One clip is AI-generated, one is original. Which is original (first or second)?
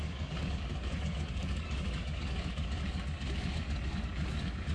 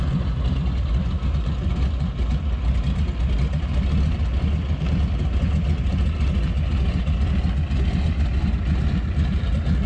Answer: second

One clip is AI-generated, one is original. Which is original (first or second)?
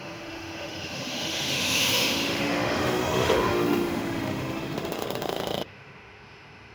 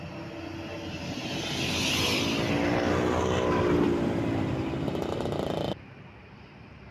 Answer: second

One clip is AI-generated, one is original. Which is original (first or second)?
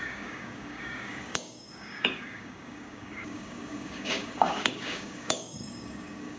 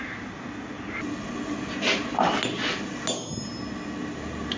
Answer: second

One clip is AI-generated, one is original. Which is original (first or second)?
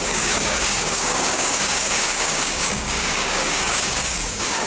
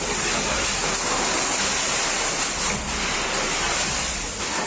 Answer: second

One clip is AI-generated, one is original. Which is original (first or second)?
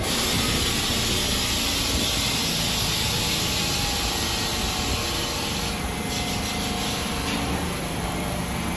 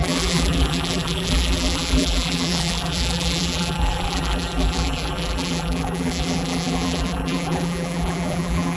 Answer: first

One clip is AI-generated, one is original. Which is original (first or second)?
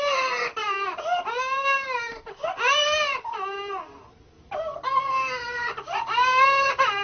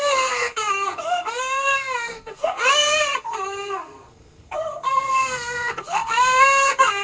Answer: first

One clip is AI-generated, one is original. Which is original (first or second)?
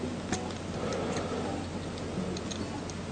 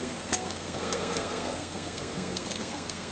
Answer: first